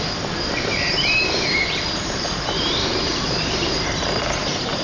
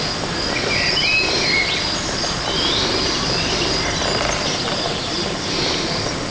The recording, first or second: second